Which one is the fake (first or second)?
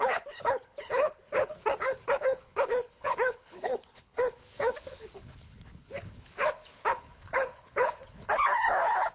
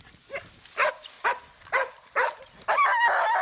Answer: first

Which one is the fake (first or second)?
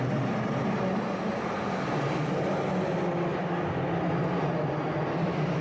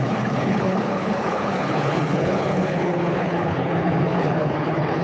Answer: second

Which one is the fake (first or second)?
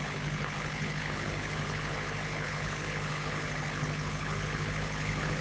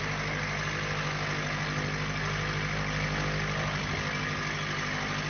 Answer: first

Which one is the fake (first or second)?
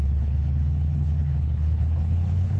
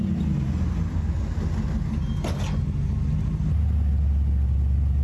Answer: first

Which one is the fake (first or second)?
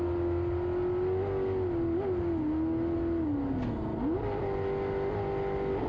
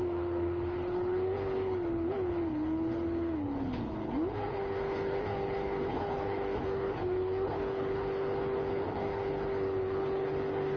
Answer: second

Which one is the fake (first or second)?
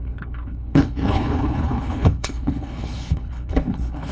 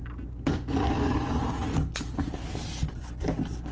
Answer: first